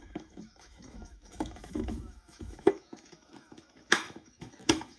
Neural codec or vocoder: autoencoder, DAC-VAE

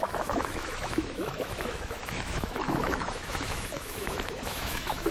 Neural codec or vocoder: autoencoder, DAC-VAE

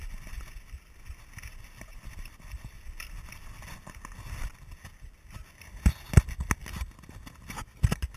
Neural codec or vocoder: none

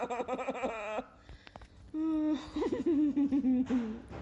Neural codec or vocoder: none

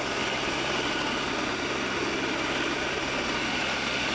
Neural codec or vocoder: none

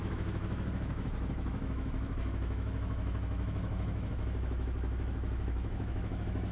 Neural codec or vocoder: autoencoder, DAC-VAE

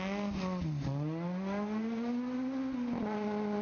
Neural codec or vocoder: none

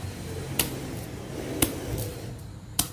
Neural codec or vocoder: none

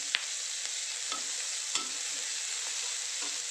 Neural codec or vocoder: none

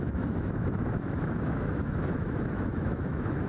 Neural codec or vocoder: autoencoder, DAC-VAE